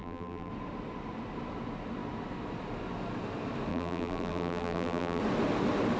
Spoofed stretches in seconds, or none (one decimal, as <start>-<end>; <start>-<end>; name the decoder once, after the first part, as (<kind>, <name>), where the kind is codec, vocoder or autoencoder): 0.0-0.5 (vocoder, BigVGAN v2); 3.7-5.2